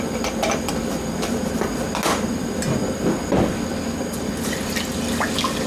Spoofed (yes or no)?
no